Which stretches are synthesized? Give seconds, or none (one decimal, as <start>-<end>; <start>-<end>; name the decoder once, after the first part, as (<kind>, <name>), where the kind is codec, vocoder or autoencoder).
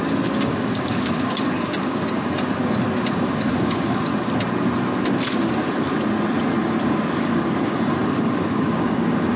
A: 0.0-2.6 (codec, DAC); 3.2-4.1; 7.2-9.4